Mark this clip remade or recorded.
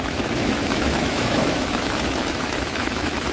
remade